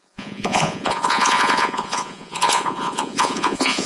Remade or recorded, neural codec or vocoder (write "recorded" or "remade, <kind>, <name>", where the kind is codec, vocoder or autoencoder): remade, vocoder, Vocos